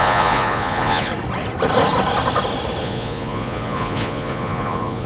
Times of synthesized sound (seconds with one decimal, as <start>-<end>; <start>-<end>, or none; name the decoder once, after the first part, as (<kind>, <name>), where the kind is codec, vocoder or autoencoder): 0.0-1.1 (vocoder, Vocos); 2.8-5.1